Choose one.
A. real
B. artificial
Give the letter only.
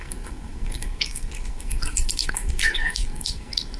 B